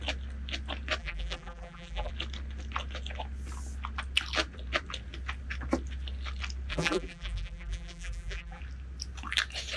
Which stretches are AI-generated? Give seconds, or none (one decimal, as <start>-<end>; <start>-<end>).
1.0-2.1; 6.7-8.6